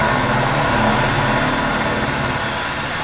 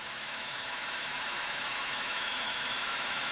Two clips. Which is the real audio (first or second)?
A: first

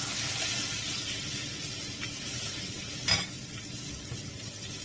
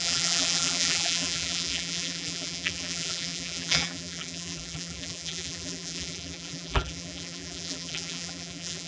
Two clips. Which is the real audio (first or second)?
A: first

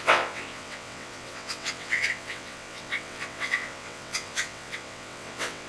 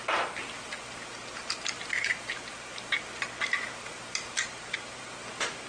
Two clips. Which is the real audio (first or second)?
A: second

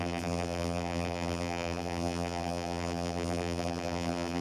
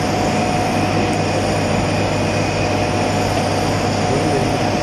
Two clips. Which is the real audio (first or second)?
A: second